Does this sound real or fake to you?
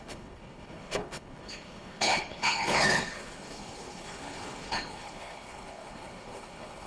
fake